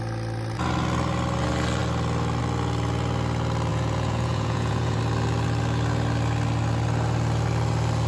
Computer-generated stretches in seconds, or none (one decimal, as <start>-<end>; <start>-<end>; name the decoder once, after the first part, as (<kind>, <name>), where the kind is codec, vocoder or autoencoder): 3.7-5.0 (vocoder, Vocos)

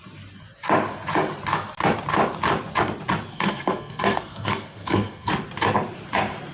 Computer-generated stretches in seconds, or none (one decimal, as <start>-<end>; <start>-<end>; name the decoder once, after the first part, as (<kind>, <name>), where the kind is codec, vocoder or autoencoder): 3.3-5.3 (codec, SNAC)

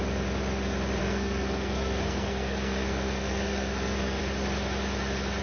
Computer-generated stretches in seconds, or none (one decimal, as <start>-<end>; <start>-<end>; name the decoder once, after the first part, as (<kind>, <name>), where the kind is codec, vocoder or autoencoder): 1.0-4.2 (codec, SNAC)

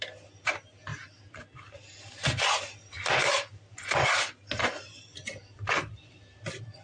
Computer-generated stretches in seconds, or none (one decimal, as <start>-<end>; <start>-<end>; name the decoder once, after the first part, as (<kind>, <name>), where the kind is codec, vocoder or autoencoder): 0.0-0.9 (vocoder, BigVGAN v2); 5.0-6.8

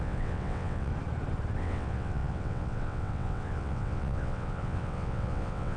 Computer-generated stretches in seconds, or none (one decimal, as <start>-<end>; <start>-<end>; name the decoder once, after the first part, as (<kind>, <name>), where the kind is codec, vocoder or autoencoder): 0.0-0.9 (vocoder, WaveNeXt); 1.6-5.8

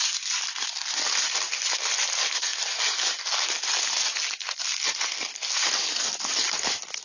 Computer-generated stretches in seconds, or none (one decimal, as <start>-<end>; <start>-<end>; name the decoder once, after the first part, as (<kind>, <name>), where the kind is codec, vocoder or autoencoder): none

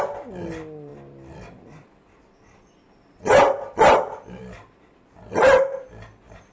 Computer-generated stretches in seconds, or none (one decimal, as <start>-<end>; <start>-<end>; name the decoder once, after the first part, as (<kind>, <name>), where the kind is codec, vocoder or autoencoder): none

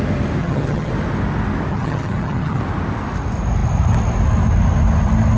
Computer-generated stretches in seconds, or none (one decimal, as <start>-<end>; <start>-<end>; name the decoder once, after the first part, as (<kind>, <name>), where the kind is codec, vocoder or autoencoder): 0.4-0.9 (vocoder, HiFi-GAN); 1.7-2.6